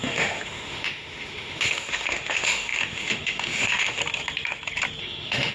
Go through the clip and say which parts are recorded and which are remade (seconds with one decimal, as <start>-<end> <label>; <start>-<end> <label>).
0.0-4.0 remade; 4.0-5.0 recorded; 5.0-5.5 remade